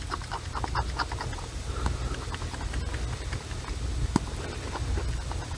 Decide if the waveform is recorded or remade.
recorded